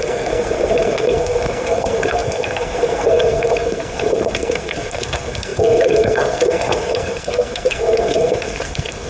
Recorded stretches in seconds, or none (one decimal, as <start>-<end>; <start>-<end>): none